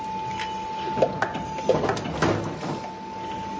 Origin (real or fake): real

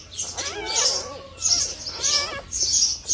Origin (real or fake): real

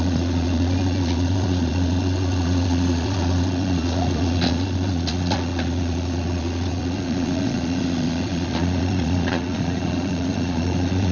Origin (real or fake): fake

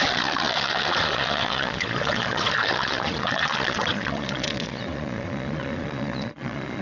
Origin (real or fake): fake